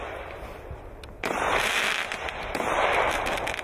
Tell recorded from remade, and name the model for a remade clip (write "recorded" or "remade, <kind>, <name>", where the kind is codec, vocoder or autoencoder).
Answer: recorded